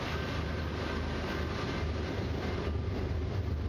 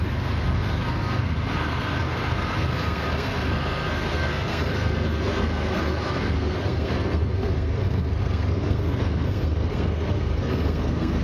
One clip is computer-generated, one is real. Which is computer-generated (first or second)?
second